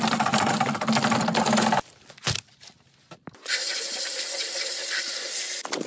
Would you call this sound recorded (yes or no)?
yes